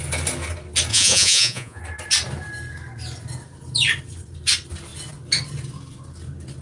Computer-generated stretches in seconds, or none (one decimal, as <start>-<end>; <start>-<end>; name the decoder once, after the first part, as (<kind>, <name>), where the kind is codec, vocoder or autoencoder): 0.9-1.8 (vocoder, Vocos)